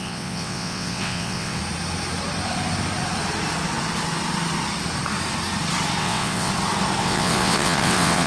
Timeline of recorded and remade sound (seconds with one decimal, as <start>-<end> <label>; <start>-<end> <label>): 0.0-1.6 remade; 1.6-6.0 recorded; 6.0-6.5 remade; 6.5-7.0 recorded; 7.0-8.3 remade

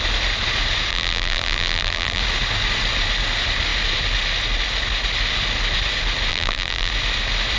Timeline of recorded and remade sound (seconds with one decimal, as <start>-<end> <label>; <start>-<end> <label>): 0.0-0.9 recorded; 0.9-2.2 remade; 2.2-6.3 recorded; 6.3-6.9 remade; 6.9-7.6 recorded

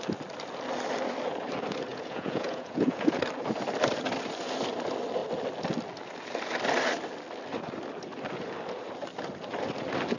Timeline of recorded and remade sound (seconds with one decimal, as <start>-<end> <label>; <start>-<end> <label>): 0.0-1.9 recorded; 1.9-3.2 remade; 3.2-10.2 recorded

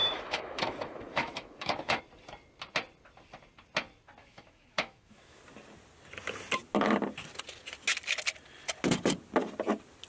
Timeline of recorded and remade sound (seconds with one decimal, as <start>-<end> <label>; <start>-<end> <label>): 0.0-2.0 remade; 2.0-4.2 recorded; 4.2-5.4 remade; 5.4-10.1 recorded

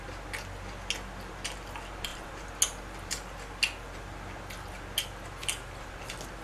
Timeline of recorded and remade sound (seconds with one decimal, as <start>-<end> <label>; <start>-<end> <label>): 0.0-6.4 recorded

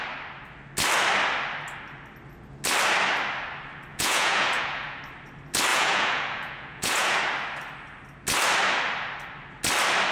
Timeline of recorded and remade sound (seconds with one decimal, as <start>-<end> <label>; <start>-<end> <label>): 0.0-3.9 recorded; 3.9-5.0 remade; 5.0-5.7 recorded; 5.7-7.2 remade; 7.2-10.1 recorded

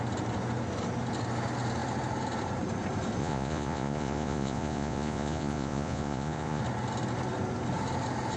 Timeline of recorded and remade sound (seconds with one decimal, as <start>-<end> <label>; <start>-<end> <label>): 0.0-3.2 recorded; 3.2-6.6 remade; 6.6-8.4 recorded

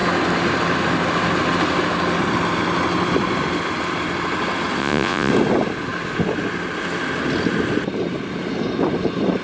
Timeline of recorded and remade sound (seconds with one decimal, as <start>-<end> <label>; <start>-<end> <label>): 0.0-4.8 recorded; 4.8-5.3 remade; 5.3-9.4 recorded